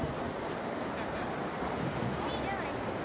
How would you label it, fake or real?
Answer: real